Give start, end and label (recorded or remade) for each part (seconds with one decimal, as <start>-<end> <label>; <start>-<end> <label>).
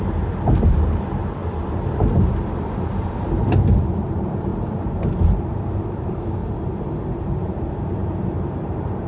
0.0-1.4 remade; 1.4-2.5 recorded; 2.5-4.5 remade; 4.5-5.6 recorded; 5.6-6.4 remade; 6.4-7.2 recorded; 7.2-9.1 remade